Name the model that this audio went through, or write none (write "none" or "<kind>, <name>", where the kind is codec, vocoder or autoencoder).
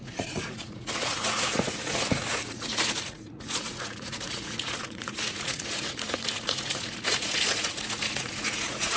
vocoder, Vocos